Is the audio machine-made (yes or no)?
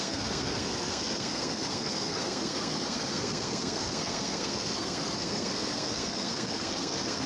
yes